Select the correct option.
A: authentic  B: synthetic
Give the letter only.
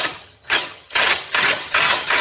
B